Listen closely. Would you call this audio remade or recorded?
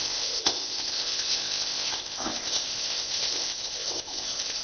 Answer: remade